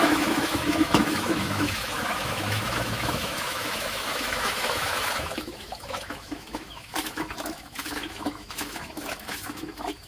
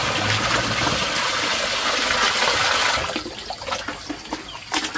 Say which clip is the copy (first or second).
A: first